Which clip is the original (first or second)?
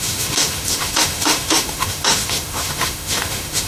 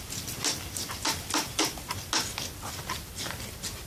second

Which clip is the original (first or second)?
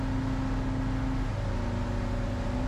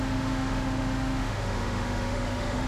first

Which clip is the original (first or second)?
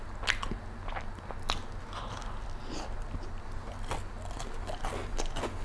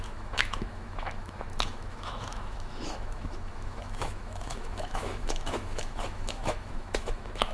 first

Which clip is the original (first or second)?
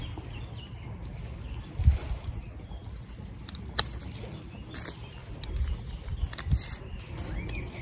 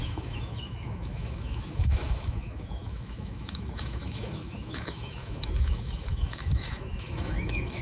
first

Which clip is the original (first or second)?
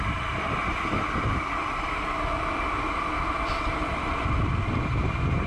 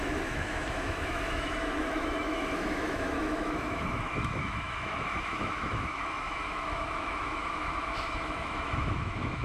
first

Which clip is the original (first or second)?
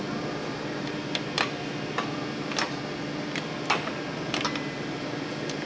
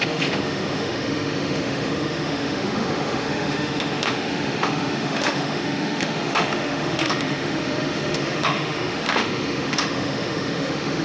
first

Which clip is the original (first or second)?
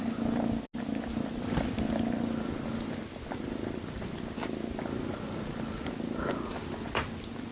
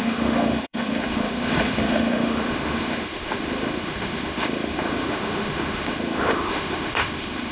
first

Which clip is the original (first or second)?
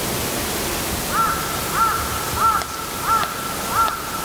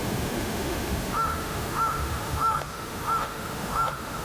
first